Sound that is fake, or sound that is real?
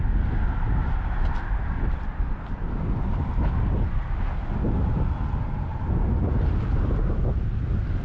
real